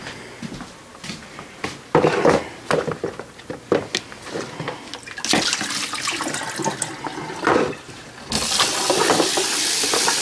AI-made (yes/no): no